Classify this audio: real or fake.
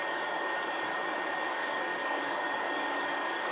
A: fake